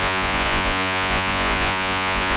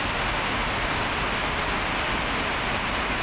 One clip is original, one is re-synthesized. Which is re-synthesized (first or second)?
first